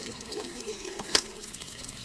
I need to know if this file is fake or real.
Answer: fake